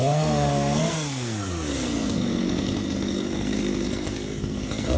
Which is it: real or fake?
fake